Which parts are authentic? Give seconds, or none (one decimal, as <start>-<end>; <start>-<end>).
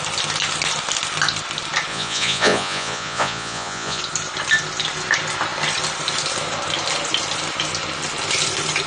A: 0.0-1.9; 4.0-8.9